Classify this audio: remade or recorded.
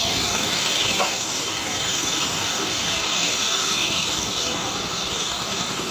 remade